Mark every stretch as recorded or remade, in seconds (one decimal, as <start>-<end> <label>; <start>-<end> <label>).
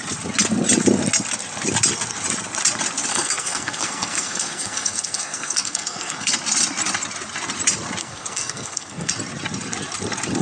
0.0-3.1 recorded; 3.1-6.3 remade; 6.3-8.0 recorded; 8.0-9.1 remade; 9.1-10.4 recorded